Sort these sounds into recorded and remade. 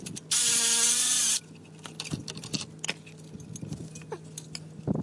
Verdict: recorded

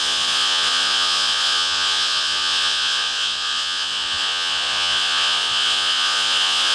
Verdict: remade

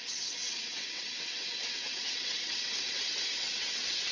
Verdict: remade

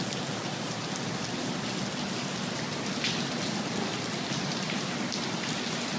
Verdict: recorded